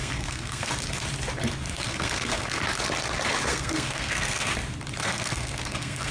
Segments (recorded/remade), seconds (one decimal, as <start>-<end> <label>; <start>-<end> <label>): 0.0-0.7 remade; 0.7-1.7 recorded; 1.7-2.6 remade; 2.6-3.5 recorded; 3.5-4.5 remade; 4.5-5.0 recorded; 5.0-6.1 remade